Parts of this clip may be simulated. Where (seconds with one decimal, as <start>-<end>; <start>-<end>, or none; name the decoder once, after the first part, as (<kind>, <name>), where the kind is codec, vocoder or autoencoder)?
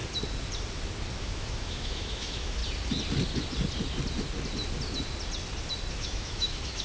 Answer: 1.2-2.6 (autoencoder, DAC-VAE); 5.9-6.8